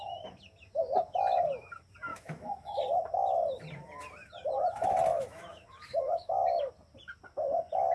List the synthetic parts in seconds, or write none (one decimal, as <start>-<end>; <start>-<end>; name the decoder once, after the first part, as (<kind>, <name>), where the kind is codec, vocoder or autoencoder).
2.1-2.8 (autoencoder, DAC-VAE); 5.1-6.7